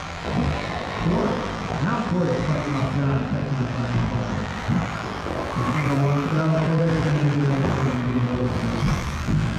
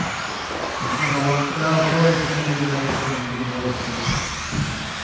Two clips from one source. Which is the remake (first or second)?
first